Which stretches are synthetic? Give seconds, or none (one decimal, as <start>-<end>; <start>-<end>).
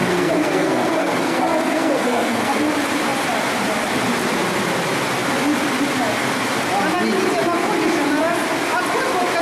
0.0-2.6